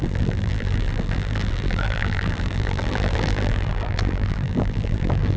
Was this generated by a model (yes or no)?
yes